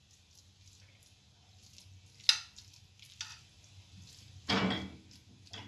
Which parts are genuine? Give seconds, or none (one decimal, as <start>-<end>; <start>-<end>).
0.0-5.7